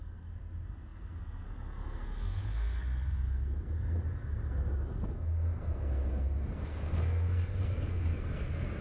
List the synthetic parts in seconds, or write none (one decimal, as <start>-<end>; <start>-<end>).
0.0-8.8